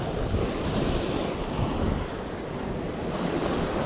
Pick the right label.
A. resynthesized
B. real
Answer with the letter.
B